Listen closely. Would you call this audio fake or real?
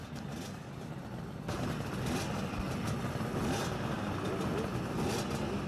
real